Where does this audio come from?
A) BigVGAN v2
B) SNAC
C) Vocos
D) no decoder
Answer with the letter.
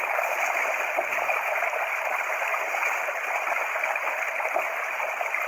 D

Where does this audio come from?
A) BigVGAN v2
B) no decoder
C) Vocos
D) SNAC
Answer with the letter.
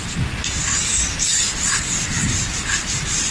A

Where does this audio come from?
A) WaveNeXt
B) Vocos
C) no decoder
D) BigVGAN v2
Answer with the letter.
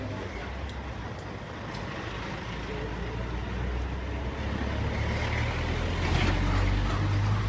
C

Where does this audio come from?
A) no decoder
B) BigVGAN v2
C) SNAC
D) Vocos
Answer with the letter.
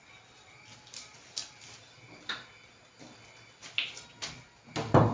A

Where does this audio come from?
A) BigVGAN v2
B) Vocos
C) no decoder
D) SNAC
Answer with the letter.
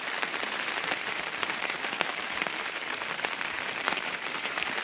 A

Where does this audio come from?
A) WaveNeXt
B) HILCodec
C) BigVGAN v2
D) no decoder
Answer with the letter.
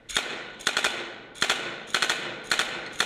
D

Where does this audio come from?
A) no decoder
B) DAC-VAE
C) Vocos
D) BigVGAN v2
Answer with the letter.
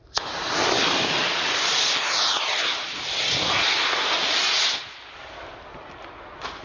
A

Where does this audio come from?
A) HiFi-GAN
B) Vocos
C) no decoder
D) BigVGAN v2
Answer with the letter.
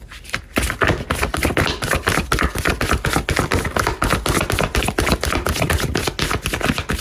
C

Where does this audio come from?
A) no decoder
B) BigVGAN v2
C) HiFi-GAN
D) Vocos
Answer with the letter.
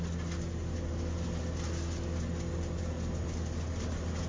A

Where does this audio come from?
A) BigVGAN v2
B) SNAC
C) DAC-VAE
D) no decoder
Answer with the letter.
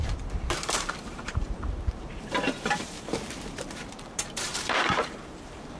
A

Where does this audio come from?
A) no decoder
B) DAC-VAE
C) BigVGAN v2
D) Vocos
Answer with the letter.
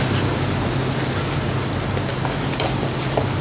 A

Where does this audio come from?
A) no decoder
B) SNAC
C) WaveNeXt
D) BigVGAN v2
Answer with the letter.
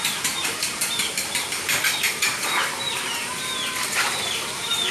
D